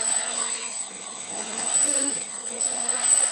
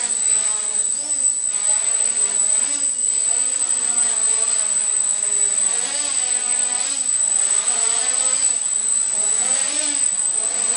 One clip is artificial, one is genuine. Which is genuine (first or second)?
second